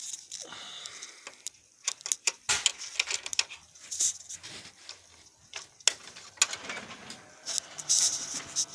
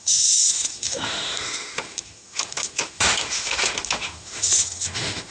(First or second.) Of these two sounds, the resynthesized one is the second